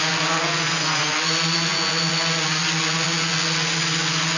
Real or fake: fake